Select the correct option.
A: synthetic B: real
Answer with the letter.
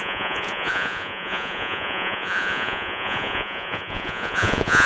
A